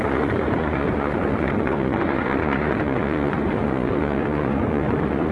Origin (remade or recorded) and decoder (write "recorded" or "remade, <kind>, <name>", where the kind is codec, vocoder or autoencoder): remade, vocoder, Vocos